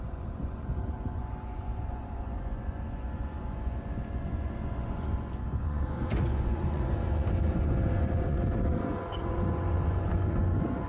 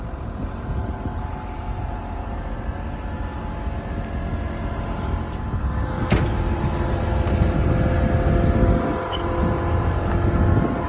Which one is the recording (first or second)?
second